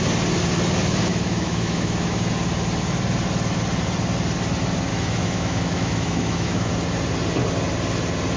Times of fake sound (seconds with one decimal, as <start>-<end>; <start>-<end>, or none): 1.1-2.3; 4.9-6.7